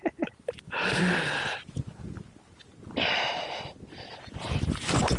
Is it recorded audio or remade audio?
recorded